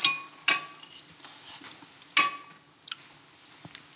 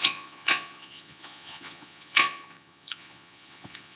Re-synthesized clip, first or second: second